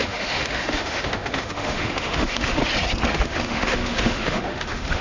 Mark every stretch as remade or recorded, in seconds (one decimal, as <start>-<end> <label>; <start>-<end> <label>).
0.0-2.6 remade; 2.6-3.1 recorded; 3.1-5.0 remade